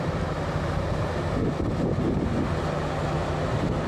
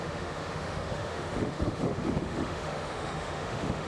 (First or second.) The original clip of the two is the first